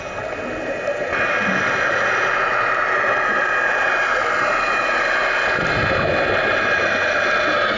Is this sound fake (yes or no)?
no